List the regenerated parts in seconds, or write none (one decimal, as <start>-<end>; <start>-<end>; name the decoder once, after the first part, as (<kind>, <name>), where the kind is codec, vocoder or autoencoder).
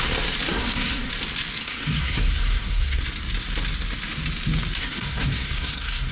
0.5-1.1 (codec, SNAC); 1.6-3.0; 4.8-6.1